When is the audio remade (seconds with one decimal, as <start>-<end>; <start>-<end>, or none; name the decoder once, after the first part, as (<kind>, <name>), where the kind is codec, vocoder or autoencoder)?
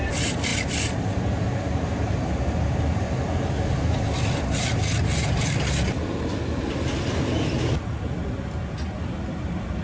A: 0.5-1.2 (vocoder, BigVGAN v2)